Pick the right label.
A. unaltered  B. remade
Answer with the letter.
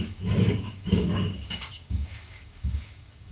B